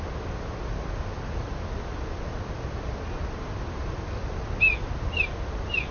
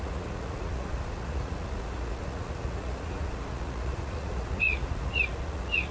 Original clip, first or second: first